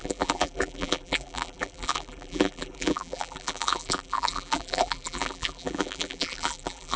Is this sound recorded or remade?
remade